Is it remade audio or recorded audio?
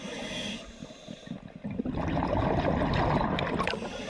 recorded